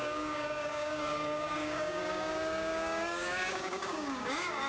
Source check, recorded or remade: remade